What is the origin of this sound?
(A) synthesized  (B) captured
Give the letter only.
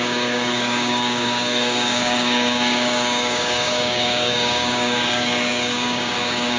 A